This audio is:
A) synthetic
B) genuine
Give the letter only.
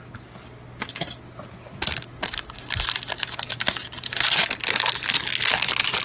B